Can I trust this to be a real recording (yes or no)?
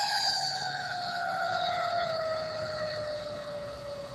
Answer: no